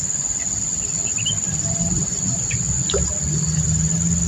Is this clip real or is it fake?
real